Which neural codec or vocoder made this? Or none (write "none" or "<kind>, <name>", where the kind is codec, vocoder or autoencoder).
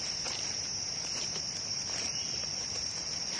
none